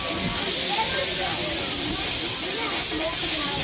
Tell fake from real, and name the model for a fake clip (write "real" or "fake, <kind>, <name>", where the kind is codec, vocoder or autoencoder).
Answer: fake, vocoder, BigVGAN v2